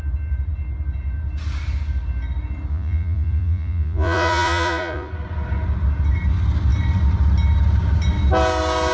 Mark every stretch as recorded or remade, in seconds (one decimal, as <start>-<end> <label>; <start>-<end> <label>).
0.0-2.7 recorded; 2.7-5.1 remade; 5.1-8.9 recorded